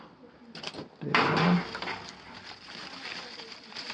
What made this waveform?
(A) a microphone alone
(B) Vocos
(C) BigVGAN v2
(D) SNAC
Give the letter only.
A